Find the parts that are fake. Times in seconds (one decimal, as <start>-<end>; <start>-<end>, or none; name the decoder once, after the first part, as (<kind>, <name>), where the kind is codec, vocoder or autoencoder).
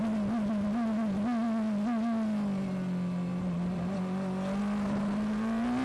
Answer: none